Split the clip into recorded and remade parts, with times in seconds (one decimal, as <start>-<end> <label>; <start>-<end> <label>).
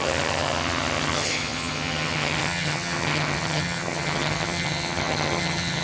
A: 0.0-5.8 remade